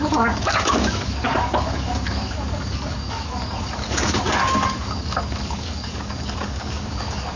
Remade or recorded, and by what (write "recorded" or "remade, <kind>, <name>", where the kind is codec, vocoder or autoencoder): remade, codec, DAC